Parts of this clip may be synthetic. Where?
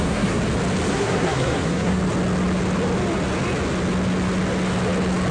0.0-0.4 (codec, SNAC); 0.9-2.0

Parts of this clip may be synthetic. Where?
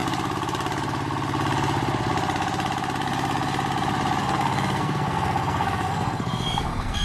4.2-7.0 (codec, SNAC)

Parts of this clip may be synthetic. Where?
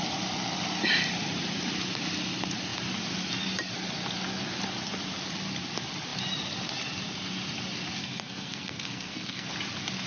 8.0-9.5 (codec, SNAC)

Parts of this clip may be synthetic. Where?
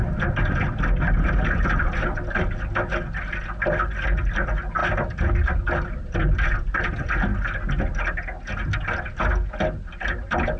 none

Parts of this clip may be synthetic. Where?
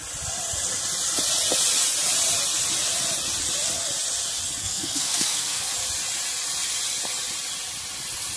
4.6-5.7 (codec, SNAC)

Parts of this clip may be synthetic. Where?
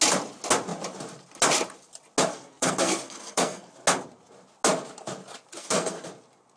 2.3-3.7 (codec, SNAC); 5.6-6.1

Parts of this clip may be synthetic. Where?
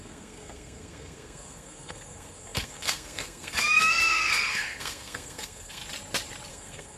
0.0-5.8 (codec, SNAC); 6.5-7.0